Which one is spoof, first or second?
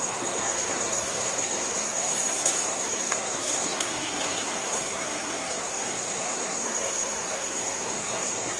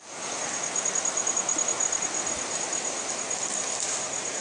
first